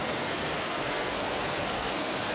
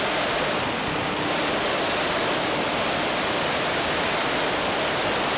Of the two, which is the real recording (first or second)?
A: second